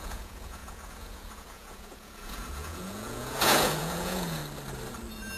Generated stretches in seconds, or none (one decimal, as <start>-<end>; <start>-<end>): 0.0-4.4